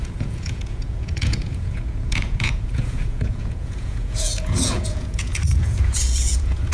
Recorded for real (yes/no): no